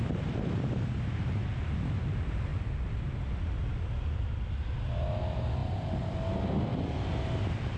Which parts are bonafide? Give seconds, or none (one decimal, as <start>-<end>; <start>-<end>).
0.0-2.5; 4.2-5.6; 7.1-7.8